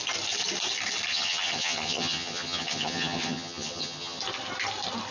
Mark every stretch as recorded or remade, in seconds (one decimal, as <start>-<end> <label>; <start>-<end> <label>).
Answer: 0.0-1.1 recorded; 1.1-4.2 remade; 4.2-5.1 recorded